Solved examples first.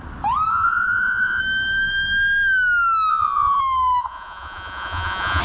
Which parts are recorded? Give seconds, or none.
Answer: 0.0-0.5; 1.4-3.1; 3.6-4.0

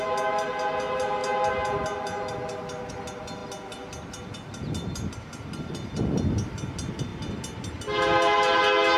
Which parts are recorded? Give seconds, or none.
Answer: 0.0-9.0

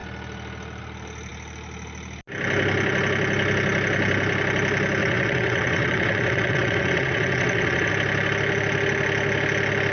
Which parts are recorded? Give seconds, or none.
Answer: 0.0-5.0; 7.9-9.9

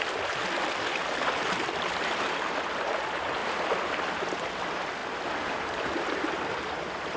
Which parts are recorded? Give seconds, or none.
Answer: 5.0-5.7

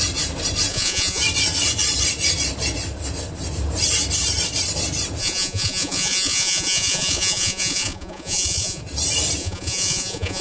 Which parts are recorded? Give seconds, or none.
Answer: 0.0-0.7; 1.2-5.2; 8.8-9.4

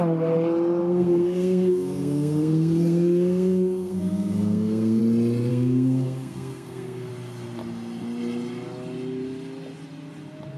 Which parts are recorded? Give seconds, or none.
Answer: 0.0-0.8; 5.0-5.5; 7.1-10.6

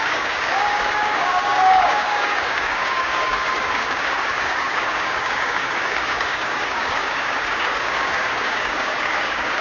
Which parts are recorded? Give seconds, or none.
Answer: none